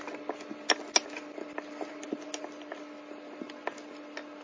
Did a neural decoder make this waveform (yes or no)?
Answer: no